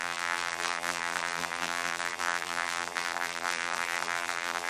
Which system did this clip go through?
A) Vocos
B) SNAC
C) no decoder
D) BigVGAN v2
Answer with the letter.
D